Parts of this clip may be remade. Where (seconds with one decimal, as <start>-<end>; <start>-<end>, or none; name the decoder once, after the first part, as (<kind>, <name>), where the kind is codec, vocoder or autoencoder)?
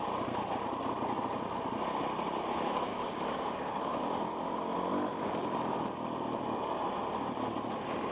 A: 2.9-4.0 (codec, DAC)